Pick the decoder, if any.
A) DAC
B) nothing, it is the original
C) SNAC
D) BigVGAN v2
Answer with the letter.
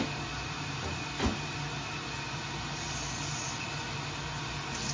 B